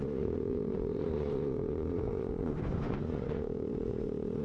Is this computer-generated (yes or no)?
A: yes